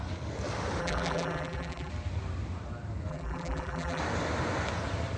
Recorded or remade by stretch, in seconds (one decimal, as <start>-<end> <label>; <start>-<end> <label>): 0.0-0.8 recorded; 0.8-1.9 remade; 1.9-3.1 recorded; 3.1-4.0 remade; 4.0-5.2 recorded